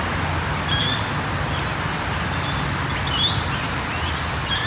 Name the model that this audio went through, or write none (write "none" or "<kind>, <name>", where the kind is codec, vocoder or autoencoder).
none